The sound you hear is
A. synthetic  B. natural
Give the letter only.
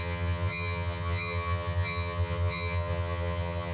A